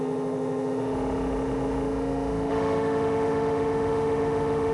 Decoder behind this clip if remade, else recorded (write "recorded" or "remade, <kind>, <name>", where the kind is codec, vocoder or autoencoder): remade, autoencoder, DAC-VAE